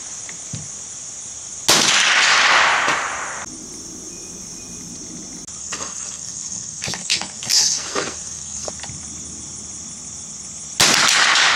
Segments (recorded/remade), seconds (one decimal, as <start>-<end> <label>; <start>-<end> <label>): 0.0-5.6 recorded; 5.6-8.7 remade; 8.7-11.6 recorded